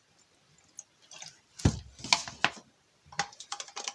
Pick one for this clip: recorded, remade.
recorded